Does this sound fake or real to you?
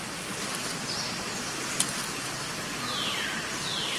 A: real